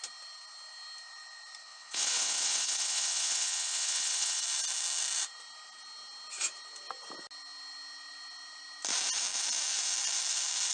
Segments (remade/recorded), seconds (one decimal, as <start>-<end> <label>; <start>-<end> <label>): 0.0-1.6 recorded; 1.6-4.4 remade; 4.4-10.7 recorded